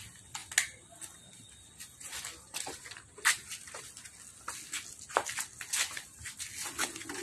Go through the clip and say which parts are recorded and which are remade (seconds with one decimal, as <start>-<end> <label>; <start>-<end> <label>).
0.0-7.2 recorded